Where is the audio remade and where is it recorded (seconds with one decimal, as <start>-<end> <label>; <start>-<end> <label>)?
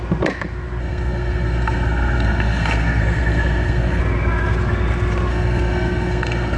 0.0-0.8 recorded; 0.8-4.0 remade; 4.0-5.3 recorded; 5.3-6.6 remade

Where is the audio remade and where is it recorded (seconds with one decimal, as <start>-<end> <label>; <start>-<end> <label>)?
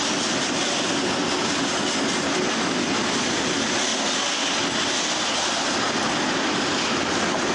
0.0-7.5 recorded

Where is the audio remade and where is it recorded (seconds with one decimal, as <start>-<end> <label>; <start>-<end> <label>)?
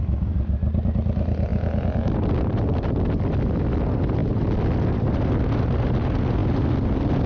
0.0-7.3 recorded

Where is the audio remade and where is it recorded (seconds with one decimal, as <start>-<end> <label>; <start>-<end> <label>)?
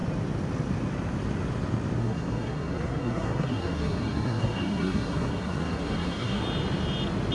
0.0-2.0 recorded; 2.0-6.4 remade; 6.4-7.3 recorded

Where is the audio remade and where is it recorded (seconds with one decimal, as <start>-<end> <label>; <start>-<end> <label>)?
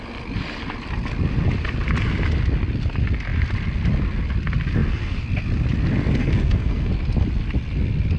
0.0-6.2 recorded; 6.2-6.9 remade; 6.9-8.2 recorded